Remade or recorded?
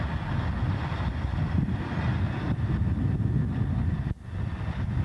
recorded